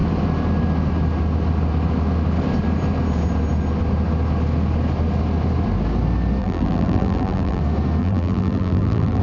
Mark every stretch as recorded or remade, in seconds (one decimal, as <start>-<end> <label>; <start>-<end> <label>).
0.0-6.4 recorded; 6.4-7.6 remade; 7.6-8.0 recorded; 8.0-9.2 remade